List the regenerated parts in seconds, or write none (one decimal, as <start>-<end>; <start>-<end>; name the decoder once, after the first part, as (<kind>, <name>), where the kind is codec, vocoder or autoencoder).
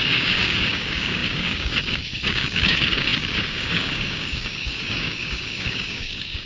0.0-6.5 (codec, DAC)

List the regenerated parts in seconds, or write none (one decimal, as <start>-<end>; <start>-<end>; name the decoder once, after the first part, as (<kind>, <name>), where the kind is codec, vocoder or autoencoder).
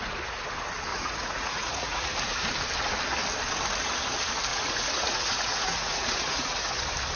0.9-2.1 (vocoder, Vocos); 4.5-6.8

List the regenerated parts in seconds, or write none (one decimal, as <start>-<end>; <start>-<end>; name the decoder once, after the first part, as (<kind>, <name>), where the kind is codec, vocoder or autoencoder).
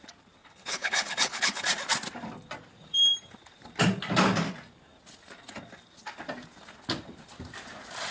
0.4-1.6 (codec, HILCodec)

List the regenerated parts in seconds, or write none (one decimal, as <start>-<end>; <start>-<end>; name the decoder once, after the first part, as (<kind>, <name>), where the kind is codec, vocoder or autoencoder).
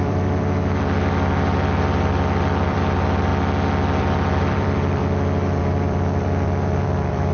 0.0-3.3 (vocoder, BigVGAN v2); 4.0-5.0; 5.6-7.3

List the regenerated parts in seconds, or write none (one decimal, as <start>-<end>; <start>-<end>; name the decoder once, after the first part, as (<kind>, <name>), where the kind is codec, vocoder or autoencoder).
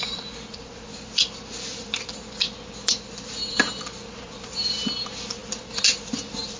none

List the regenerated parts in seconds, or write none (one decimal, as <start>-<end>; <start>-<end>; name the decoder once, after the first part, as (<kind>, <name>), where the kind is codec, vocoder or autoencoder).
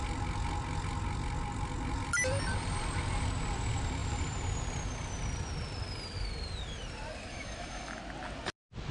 7.3-8.0 (autoencoder, DAC-VAE)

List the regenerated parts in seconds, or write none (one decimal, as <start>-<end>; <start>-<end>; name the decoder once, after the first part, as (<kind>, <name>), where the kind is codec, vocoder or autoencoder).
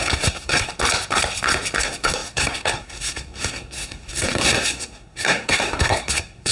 0.0-0.7 (codec, SNAC); 1.8-6.5